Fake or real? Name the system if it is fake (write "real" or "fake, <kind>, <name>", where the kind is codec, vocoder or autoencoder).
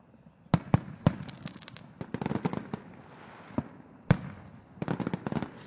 real